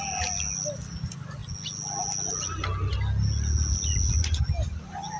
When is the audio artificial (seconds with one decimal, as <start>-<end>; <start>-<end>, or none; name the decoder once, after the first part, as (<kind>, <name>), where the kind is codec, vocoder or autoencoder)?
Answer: none